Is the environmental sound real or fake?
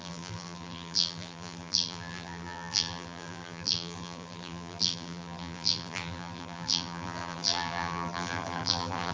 fake